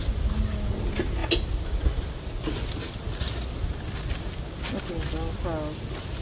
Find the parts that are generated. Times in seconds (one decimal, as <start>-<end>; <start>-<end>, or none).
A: none